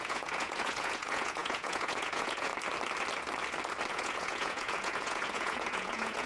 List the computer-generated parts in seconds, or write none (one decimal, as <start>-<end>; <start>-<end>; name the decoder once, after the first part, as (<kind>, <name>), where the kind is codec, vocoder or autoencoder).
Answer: 0.0-2.5 (vocoder, Vocos); 3.9-6.3